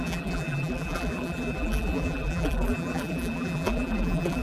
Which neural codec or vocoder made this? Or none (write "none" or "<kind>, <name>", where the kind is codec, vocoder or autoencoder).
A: vocoder, BigVGAN v2